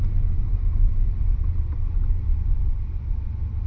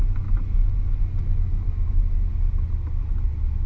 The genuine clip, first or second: second